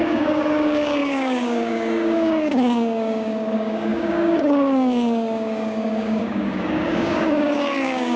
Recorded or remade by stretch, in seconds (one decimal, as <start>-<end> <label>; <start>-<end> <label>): 0.0-8.2 remade